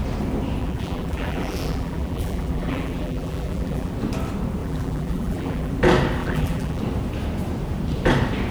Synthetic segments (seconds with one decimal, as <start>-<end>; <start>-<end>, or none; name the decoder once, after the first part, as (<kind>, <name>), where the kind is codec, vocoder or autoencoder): 0.6-3.9 (vocoder, BigVGAN v2); 4.6-5.7; 6.2-6.8